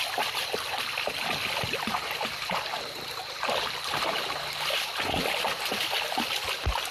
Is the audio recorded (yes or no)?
yes